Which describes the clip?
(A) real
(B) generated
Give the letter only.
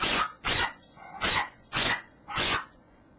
B